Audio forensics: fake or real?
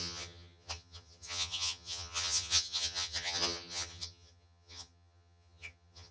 fake